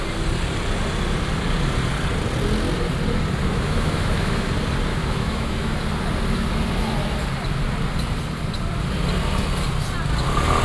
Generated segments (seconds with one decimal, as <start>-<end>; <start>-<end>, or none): 3.5-4.5; 4.9-5.7